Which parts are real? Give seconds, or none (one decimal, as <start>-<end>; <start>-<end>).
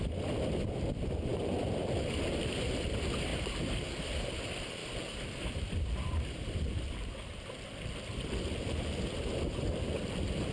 0.0-1.3; 2.2-4.8; 9.3-10.5